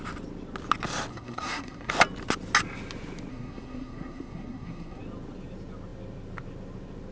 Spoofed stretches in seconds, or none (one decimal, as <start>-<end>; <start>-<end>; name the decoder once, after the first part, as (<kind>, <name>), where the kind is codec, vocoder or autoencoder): 1.1-1.9 (codec, SNAC); 3.3-5.0